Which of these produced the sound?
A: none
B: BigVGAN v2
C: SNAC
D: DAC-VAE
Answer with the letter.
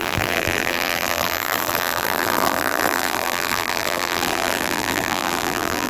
B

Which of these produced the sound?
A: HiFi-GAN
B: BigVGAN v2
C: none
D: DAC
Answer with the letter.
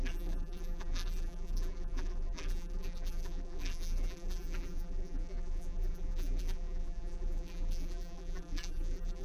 B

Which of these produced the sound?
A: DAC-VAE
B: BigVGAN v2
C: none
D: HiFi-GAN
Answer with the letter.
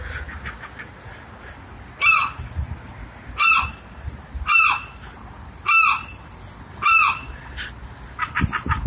C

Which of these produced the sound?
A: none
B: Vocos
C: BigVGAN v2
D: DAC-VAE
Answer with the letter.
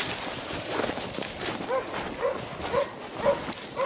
A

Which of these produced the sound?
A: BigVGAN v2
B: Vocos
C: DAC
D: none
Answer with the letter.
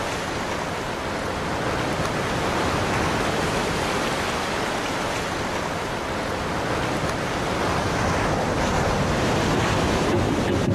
D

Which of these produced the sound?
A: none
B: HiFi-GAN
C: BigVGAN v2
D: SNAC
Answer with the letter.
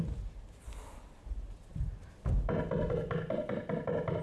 A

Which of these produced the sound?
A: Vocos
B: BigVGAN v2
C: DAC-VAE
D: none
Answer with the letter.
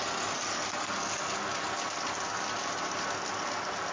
D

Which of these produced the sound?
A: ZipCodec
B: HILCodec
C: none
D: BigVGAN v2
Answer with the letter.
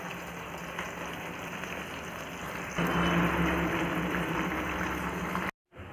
C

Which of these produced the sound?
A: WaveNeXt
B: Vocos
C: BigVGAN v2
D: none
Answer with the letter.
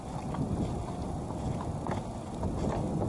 D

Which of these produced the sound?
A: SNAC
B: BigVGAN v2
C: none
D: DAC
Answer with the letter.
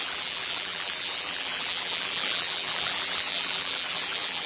B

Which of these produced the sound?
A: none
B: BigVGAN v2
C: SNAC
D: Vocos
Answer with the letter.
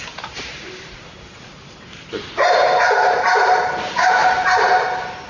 B